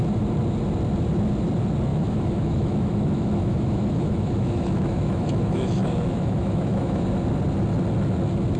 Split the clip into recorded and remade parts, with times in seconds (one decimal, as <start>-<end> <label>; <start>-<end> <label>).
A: 0.0-1.9 recorded; 1.9-7.0 remade; 7.0-8.6 recorded